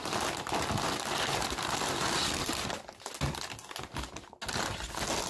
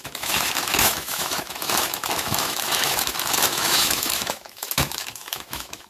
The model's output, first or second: second